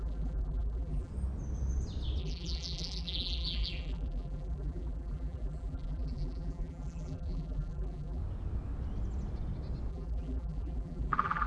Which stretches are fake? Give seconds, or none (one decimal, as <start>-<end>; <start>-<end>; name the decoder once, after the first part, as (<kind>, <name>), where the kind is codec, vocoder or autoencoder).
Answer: 0.0-1.1 (vocoder, BigVGAN v2); 2.2-8.2; 9.9-11.5

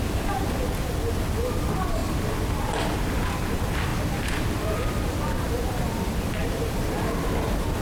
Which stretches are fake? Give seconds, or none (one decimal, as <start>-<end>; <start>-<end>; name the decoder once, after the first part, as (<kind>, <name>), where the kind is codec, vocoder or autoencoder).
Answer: 3.9-5.1 (vocoder, BigVGAN v2); 6.4-7.2

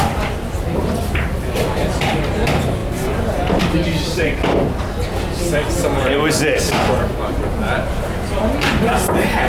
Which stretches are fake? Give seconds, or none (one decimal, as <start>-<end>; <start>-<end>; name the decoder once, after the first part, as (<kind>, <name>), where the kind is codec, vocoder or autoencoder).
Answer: 0.0-2.8 (vocoder, BigVGAN v2); 3.6-7.2; 8.7-9.5

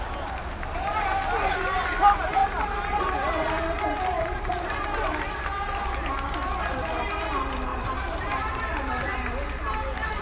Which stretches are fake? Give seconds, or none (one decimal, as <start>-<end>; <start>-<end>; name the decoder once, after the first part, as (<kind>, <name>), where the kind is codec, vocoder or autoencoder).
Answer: 7.7-8.6 (vocoder, BigVGAN v2)

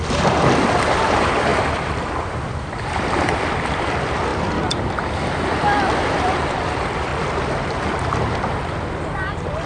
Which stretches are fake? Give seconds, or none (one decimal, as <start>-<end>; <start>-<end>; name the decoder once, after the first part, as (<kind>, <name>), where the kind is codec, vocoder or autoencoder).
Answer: 0.0-7.1 (vocoder, BigVGAN v2); 7.6-9.7

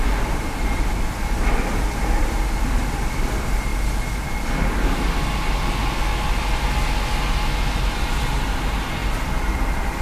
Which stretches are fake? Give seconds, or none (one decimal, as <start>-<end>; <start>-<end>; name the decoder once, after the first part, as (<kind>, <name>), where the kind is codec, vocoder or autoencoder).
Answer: 0.0-3.7 (vocoder, BigVGAN v2); 8.1-10.0

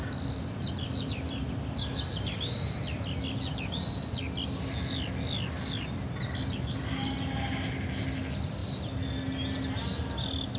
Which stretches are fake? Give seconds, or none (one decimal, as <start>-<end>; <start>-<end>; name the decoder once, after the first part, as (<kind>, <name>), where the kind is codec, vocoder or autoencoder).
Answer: none